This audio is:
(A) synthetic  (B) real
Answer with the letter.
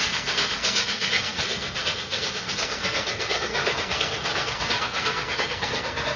A